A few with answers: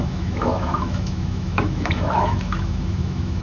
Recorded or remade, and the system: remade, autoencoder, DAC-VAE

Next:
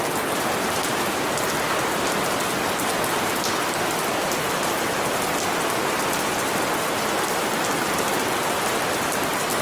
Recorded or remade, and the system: recorded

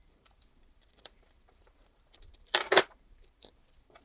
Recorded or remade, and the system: remade, vocoder, BigVGAN v2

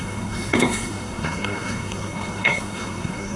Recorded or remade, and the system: remade, codec, SNAC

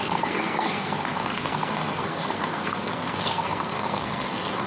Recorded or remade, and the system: remade, codec, SNAC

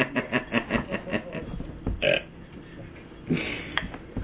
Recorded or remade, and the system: recorded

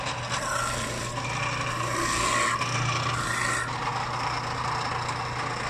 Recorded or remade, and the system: recorded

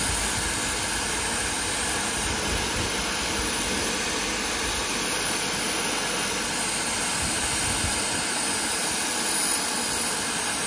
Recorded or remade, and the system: recorded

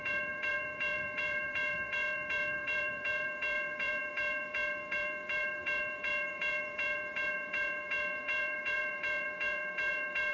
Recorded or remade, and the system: remade, vocoder, Vocos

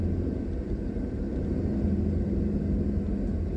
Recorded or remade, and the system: recorded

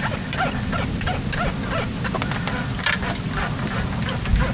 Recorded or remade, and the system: recorded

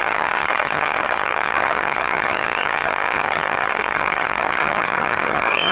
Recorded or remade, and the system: remade, vocoder, HiFi-GAN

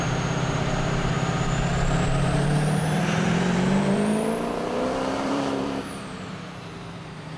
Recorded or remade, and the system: remade, vocoder, BigVGAN v2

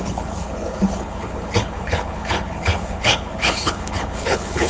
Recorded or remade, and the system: remade, codec, HILCodec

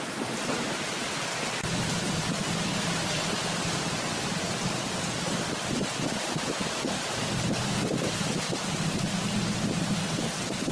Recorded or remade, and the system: remade, vocoder, BigVGAN v2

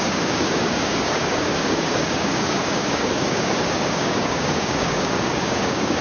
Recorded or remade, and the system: remade, codec, DAC